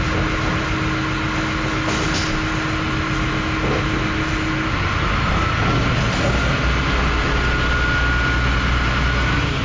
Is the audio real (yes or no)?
yes